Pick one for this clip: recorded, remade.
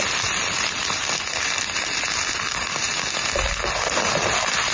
recorded